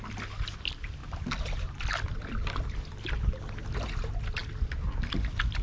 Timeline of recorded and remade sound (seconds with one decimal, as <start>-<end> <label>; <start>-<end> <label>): 0.0-5.6 recorded